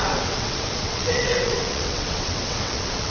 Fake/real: fake